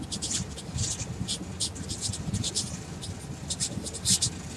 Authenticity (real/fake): real